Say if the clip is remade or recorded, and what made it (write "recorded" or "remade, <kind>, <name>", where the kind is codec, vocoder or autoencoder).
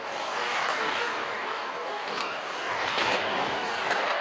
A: remade, codec, DAC